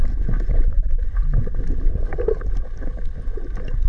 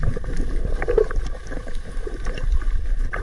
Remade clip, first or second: second